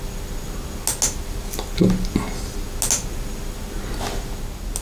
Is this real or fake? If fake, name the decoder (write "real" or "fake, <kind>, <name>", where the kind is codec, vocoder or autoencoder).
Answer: real